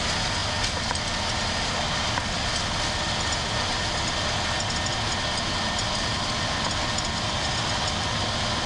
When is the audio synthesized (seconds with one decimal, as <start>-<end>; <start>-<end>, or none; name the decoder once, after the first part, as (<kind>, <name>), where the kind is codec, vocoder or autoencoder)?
none